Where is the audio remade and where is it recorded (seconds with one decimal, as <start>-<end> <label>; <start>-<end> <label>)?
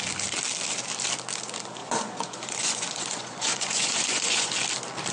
0.0-1.8 recorded; 1.8-4.5 remade; 4.5-5.1 recorded